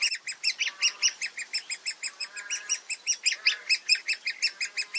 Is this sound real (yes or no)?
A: yes